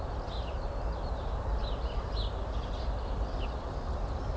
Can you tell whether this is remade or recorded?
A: recorded